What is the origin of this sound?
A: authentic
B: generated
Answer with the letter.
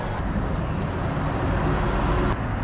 A